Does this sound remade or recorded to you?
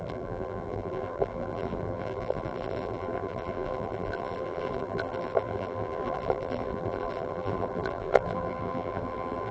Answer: remade